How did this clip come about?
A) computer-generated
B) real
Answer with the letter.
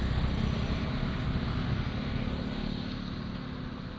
B